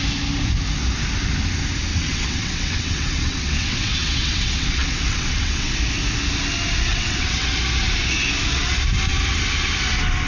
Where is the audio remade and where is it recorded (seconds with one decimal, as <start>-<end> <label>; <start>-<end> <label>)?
0.0-1.9 recorded; 1.9-5.7 remade; 5.7-6.9 recorded; 6.9-7.5 remade; 7.5-10.3 recorded